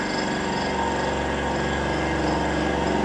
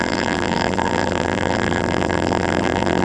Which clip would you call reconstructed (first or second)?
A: second